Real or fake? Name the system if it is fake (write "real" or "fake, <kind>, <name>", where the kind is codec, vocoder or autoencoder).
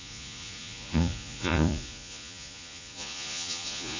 fake, vocoder, Vocos